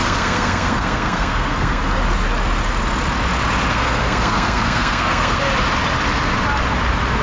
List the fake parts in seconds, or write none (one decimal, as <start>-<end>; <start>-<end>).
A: 0.0-1.8; 3.7-5.4